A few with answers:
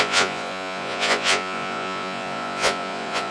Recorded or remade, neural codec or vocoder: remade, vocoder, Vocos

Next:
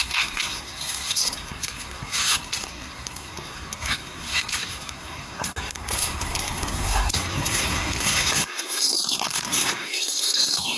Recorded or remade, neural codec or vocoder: remade, codec, SNAC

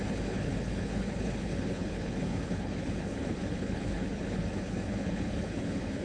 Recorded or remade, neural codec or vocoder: remade, codec, HILCodec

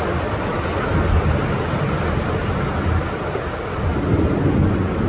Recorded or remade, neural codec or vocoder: recorded